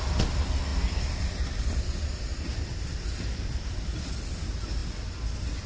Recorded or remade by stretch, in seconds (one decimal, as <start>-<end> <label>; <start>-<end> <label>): 0.0-0.7 recorded; 0.7-4.1 remade; 4.1-5.7 recorded

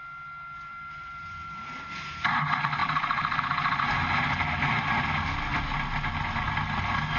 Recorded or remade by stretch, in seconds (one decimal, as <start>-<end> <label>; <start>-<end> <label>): 0.0-0.7 recorded; 0.7-2.4 remade; 2.4-2.8 recorded; 2.8-3.4 remade; 3.4-7.2 recorded